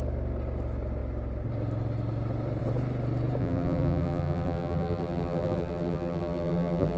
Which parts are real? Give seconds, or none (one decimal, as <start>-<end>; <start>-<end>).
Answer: 0.0-3.4